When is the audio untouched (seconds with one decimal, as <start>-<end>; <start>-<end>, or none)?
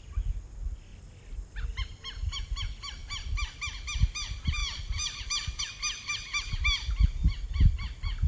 0.0-0.9; 2.4-4.6; 5.6-7.2